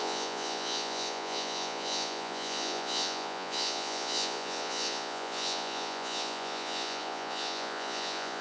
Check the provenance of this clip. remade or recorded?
remade